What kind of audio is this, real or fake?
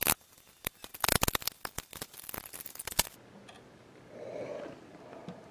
real